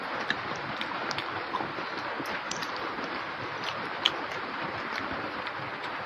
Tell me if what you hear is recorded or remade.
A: recorded